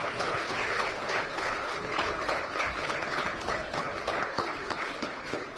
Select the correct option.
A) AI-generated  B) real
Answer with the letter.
A